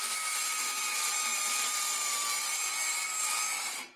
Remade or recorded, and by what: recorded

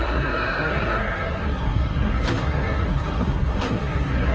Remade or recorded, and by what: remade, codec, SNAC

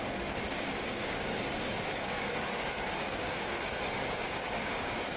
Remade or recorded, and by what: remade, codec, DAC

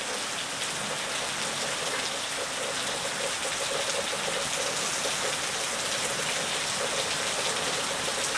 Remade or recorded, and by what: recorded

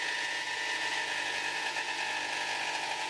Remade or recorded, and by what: remade, vocoder, Vocos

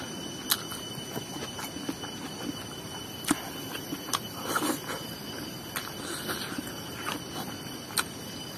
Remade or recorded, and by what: recorded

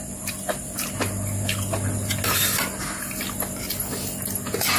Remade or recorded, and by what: recorded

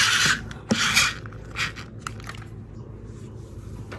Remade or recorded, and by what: recorded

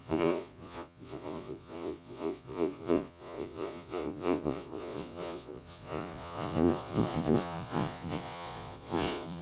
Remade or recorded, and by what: remade, vocoder, Vocos